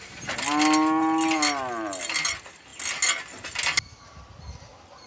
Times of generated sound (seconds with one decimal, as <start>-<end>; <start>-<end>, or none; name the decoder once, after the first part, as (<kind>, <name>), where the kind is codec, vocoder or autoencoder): none